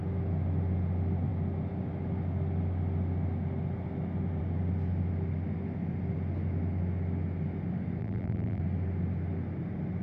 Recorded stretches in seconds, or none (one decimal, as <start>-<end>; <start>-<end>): 0.0-8.0; 8.6-10.0